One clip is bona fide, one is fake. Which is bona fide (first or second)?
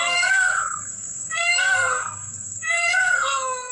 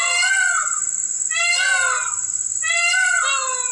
second